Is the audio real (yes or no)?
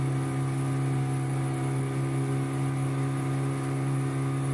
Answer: yes